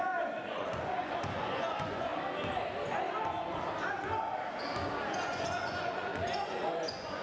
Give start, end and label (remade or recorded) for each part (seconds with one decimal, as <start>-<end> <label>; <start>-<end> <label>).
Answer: 0.0-2.1 remade; 2.1-5.1 recorded; 5.1-7.2 remade